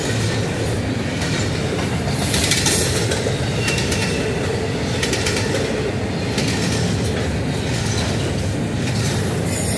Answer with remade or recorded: recorded